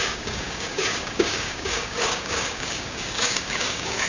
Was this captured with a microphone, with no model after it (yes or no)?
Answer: no